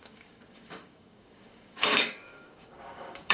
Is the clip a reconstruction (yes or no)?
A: yes